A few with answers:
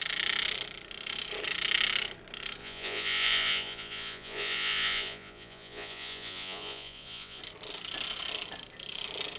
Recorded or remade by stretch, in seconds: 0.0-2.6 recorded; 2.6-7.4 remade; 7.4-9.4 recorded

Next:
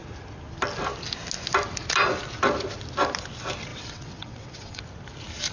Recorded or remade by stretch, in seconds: 0.0-3.7 recorded; 3.7-4.8 remade; 4.8-5.5 recorded

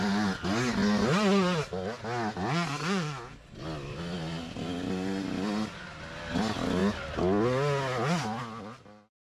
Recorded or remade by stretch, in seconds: 0.0-9.4 recorded

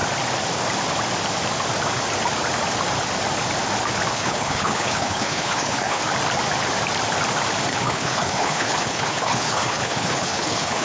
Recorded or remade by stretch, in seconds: 0.0-4.1 recorded; 4.1-6.0 remade; 6.0-7.7 recorded; 7.7-10.8 remade

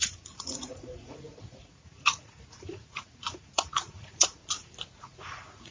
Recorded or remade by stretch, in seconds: 0.0-4.4 remade; 4.4-5.0 recorded; 5.0-5.7 remade

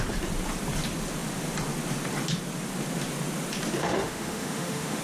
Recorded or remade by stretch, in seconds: 0.0-3.8 recorded; 3.8-5.0 remade